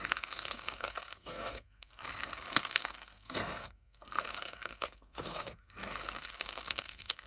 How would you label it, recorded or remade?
remade